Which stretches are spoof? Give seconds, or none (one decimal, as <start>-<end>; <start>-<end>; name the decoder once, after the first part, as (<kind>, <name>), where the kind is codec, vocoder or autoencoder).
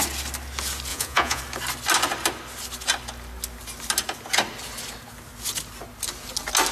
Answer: 0.9-1.4 (vocoder, Vocos)